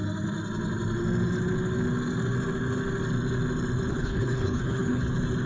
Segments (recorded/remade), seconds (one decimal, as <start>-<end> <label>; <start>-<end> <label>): 0.0-3.9 recorded; 3.9-5.0 remade; 5.0-5.5 recorded